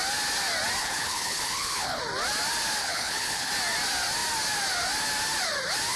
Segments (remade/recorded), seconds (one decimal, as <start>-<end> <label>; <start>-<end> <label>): 0.0-0.8 recorded; 0.8-2.0 remade; 2.0-2.8 recorded; 2.8-3.5 remade; 3.5-6.0 recorded